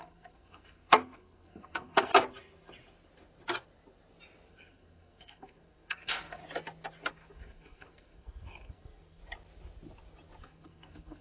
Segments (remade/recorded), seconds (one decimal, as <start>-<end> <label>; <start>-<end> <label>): 0.0-2.1 remade; 2.1-4.5 recorded; 4.5-6.4 remade; 6.4-7.1 recorded; 7.1-9.2 remade; 9.2-10.4 recorded; 10.4-11.2 remade